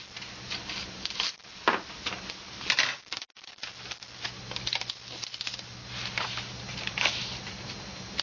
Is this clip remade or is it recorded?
recorded